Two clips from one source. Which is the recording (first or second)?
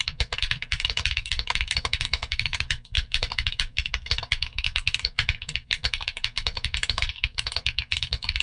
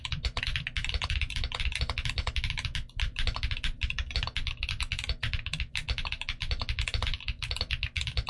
second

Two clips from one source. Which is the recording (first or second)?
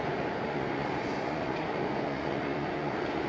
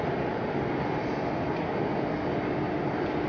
second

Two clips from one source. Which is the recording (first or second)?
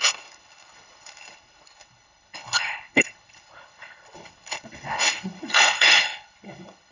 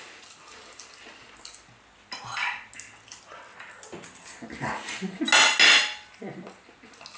second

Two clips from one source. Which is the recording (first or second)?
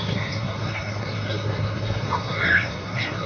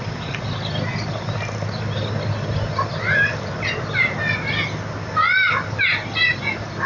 second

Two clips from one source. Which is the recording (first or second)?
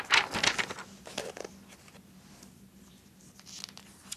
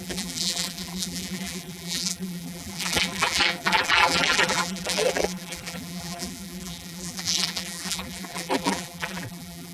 first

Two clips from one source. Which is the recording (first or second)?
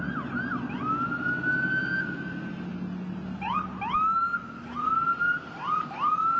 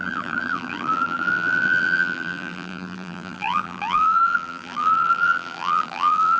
first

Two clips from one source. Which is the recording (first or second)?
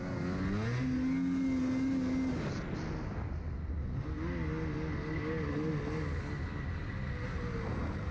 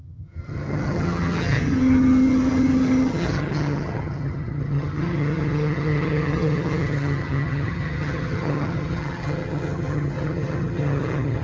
first